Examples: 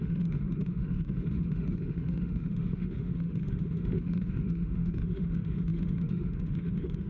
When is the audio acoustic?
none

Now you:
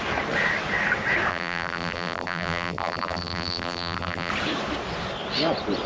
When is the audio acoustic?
0.0-1.3; 4.3-5.9